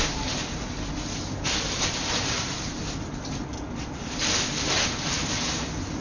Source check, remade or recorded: recorded